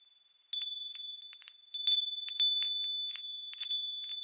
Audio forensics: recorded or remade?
recorded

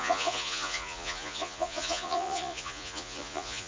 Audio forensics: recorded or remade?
remade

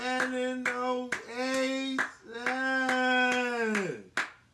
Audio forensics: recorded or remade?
recorded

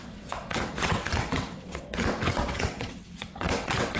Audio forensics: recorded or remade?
remade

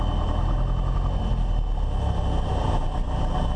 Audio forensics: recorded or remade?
recorded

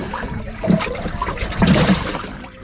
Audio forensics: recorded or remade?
remade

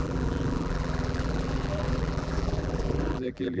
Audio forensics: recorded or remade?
remade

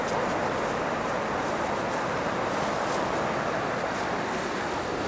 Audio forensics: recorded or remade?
recorded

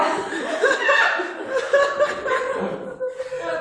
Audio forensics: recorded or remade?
recorded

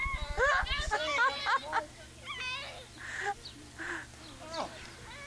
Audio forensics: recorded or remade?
recorded